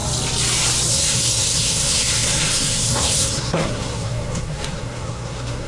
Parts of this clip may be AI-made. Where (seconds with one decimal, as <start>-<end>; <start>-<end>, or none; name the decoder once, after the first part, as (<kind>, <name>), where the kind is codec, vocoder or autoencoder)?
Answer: 0.9-5.7 (codec, SNAC)